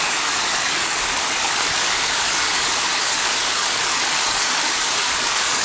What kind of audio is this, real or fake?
fake